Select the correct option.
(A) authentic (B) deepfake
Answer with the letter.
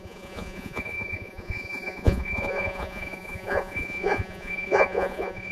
B